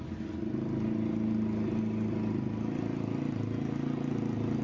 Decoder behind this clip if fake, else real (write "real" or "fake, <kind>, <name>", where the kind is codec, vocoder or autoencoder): real